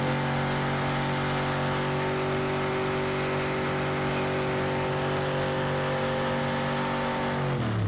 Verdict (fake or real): real